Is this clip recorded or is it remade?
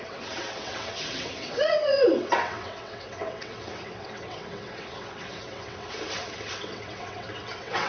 remade